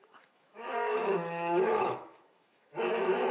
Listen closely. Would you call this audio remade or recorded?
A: remade